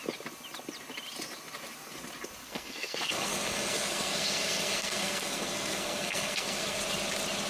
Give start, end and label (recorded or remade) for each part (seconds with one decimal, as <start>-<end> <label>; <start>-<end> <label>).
0.0-2.4 recorded; 2.4-6.8 remade; 6.8-7.5 recorded